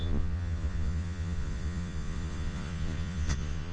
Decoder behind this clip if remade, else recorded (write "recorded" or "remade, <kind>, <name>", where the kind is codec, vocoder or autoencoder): remade, vocoder, Vocos